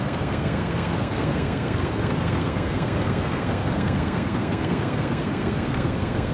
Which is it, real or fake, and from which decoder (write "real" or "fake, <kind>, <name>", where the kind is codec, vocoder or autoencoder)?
fake, codec, SNAC